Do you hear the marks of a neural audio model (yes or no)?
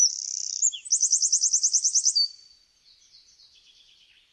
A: yes